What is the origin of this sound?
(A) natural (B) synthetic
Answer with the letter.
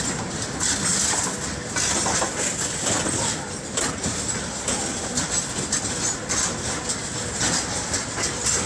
A